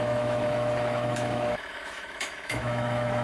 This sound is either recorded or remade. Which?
remade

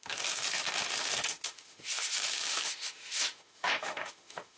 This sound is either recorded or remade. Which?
remade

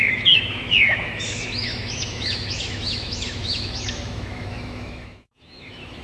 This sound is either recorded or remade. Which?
remade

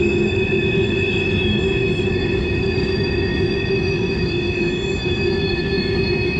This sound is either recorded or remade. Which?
remade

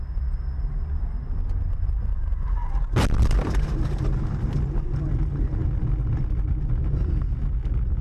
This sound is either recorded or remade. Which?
recorded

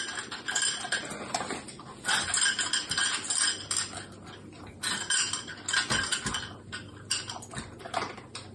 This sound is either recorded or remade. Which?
recorded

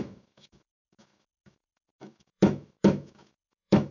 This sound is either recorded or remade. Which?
remade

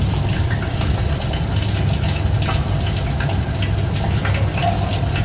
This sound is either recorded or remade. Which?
recorded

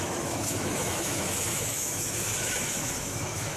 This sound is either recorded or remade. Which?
remade